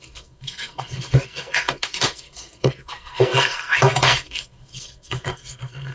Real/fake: fake